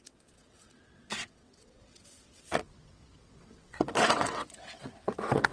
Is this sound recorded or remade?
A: remade